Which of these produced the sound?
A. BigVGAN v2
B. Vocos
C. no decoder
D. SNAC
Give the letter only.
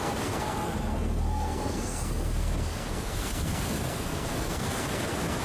D